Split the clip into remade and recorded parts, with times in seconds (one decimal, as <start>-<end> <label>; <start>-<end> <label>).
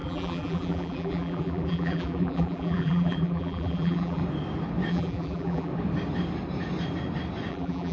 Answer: 0.0-4.2 remade; 4.2-4.9 recorded; 4.9-5.7 remade; 5.7-7.5 recorded; 7.5-7.9 remade